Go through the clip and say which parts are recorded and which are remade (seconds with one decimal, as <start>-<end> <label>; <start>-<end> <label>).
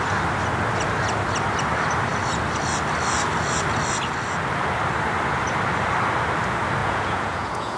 0.0-6.8 recorded; 6.8-7.8 remade